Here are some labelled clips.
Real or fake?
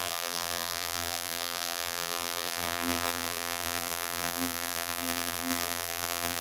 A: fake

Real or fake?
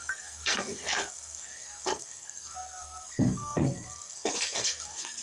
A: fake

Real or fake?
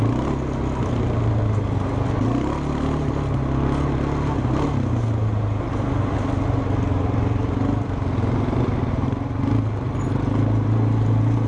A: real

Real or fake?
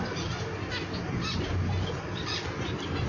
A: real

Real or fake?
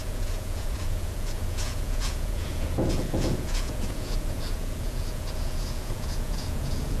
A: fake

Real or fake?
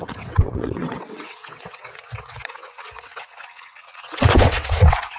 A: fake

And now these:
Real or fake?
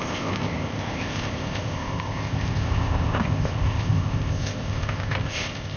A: fake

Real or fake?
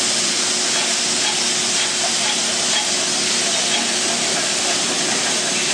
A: real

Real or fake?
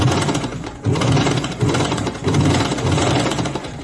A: fake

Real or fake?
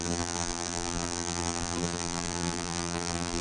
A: fake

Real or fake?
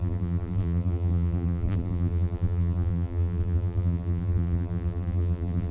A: fake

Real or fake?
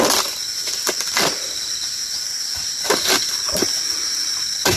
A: real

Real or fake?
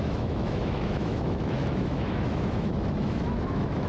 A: fake